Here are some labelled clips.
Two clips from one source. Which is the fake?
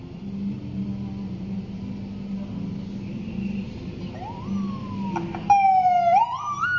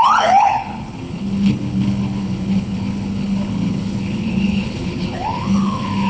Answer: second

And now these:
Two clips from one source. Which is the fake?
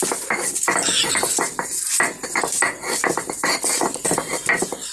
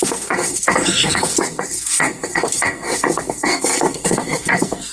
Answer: second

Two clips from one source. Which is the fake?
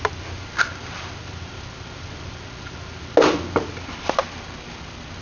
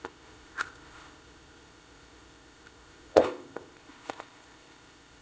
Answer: second